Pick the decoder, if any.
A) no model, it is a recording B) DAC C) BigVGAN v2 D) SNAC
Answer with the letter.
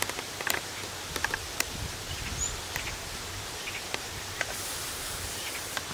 C